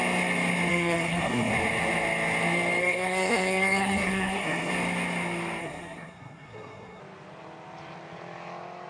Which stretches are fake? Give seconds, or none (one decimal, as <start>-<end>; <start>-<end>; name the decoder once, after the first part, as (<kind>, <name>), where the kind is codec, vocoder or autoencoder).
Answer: 0.7-1.5 (codec, SNAC); 2.8-4.7; 5.6-7.0